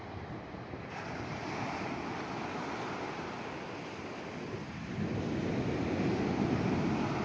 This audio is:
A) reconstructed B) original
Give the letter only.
B